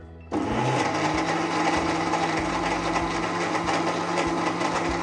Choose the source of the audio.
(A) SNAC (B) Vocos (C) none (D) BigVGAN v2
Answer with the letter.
C